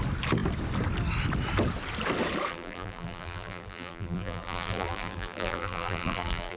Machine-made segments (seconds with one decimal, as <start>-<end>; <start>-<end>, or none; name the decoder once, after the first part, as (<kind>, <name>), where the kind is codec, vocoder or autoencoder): 2.5-6.6 (vocoder, BigVGAN v2)

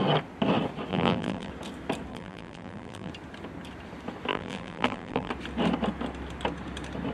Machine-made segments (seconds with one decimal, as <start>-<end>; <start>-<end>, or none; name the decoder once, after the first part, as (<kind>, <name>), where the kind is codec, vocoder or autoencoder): 0.9-1.5 (vocoder, BigVGAN v2); 2.1-3.1; 4.3-5.3

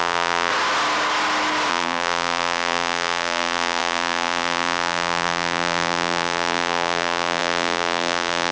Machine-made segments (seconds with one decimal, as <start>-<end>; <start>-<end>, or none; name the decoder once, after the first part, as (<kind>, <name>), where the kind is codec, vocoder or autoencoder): 0.0-0.5 (vocoder, BigVGAN v2); 1.7-8.5

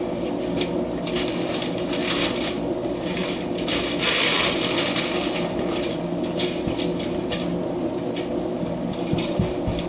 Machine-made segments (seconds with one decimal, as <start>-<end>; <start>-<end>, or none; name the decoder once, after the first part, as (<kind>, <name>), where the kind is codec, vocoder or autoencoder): none

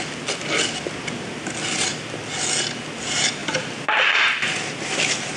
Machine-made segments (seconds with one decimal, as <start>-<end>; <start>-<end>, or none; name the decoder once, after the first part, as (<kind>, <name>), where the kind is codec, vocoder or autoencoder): 3.4-4.0 (vocoder, BigVGAN v2)

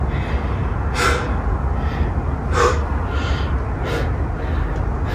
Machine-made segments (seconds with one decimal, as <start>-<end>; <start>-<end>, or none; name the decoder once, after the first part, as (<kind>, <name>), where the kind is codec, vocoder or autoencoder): none

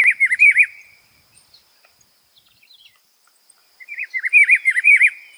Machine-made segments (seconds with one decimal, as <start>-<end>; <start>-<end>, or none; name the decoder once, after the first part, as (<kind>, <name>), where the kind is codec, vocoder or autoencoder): 3.6-5.0 (vocoder, BigVGAN v2)

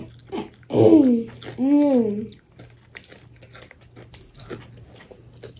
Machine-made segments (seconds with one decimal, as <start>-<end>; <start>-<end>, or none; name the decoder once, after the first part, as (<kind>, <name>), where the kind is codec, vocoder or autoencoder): none